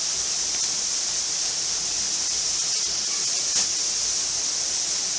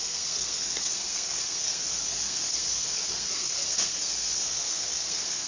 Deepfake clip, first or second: second